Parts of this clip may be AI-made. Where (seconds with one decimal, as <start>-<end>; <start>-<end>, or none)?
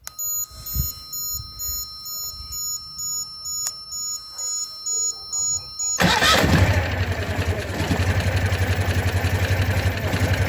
none